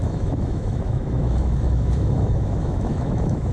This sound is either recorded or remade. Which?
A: remade